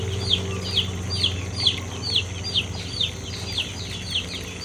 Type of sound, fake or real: real